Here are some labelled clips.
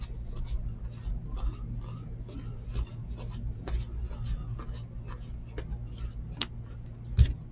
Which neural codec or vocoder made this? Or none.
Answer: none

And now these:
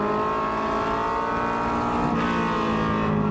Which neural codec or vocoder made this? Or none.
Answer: none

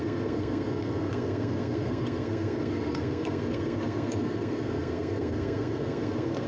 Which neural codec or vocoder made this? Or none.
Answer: codec, SNAC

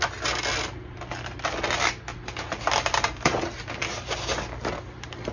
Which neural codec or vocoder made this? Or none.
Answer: none